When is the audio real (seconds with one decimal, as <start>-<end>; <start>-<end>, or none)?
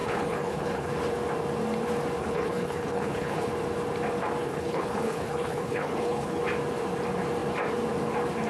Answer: 0.9-2.2; 3.5-4.4; 6.4-8.5